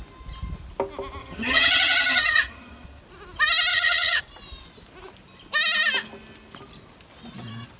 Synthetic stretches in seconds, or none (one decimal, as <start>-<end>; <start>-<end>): 1.2-3.0; 3.7-4.2